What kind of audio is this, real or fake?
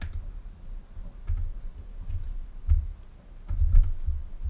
real